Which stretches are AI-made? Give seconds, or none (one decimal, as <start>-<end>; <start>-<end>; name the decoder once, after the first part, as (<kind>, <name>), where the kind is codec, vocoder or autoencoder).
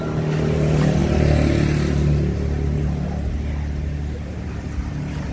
none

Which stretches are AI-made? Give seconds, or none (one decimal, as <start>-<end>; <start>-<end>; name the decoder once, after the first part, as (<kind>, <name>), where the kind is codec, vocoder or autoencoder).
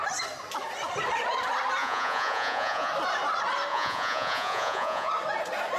1.8-2.9 (vocoder, Vocos); 3.7-5.1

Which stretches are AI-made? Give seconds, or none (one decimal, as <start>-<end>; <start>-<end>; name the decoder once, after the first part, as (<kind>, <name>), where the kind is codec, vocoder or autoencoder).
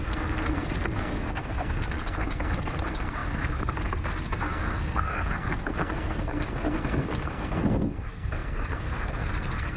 0.0-9.8 (codec, SNAC)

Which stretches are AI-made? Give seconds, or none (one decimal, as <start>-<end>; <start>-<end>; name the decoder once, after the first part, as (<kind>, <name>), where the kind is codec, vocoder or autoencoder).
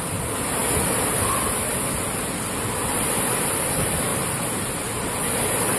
none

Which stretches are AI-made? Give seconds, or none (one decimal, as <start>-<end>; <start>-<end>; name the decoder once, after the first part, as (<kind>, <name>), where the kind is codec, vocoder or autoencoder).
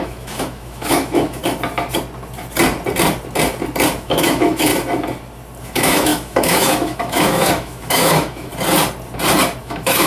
0.0-1.4 (autoencoder, DAC-VAE); 4.0-4.7; 5.6-8.5; 9.6-10.1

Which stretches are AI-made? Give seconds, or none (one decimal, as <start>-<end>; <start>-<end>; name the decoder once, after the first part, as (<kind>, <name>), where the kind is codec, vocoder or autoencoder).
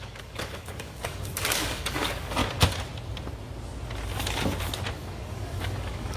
0.0-2.4 (codec, DAC); 4.9-6.2